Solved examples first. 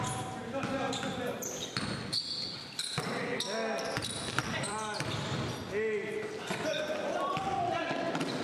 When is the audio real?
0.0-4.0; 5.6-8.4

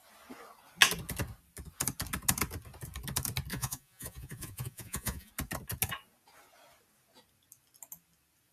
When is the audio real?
0.0-3.5; 5.3-8.5